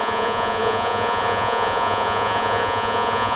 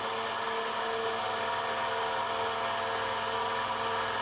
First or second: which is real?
second